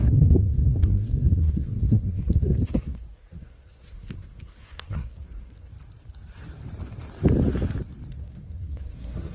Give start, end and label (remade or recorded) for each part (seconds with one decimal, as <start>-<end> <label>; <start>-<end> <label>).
0.0-5.7 remade; 5.7-8.1 recorded; 8.1-9.3 remade